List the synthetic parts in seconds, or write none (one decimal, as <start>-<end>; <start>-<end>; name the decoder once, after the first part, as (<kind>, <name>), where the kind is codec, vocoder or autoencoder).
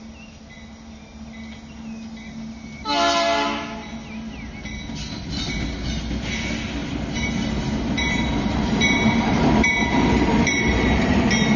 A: 6.8-11.2 (vocoder, BigVGAN v2)